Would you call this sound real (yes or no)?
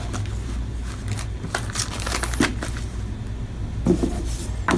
yes